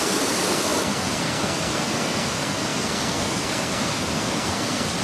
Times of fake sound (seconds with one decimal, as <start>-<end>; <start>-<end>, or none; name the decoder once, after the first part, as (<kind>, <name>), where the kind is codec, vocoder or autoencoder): 0.0-5.0 (codec, SNAC)